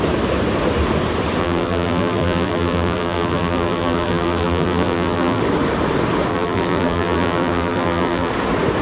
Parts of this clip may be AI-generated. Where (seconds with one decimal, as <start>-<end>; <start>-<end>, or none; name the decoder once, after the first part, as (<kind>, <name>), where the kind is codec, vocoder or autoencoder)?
1.4-5.4 (vocoder, BigVGAN v2); 6.3-8.3